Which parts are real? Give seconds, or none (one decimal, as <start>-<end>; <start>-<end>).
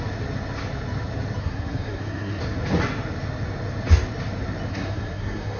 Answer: 0.0-1.4; 2.4-4.7